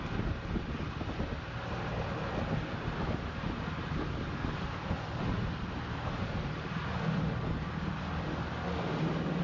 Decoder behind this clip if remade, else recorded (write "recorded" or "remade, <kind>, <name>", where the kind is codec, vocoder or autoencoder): recorded